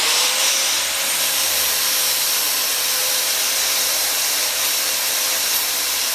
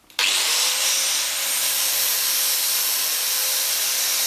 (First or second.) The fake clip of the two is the first